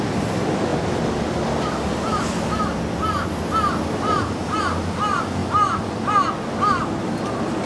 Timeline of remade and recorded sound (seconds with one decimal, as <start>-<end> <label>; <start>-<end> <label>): 0.0-7.7 recorded